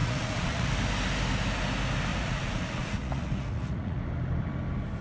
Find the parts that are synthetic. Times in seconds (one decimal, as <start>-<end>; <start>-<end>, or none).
0.0-0.7; 2.1-4.0